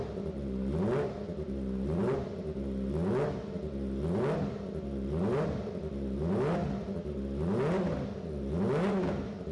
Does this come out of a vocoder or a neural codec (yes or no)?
no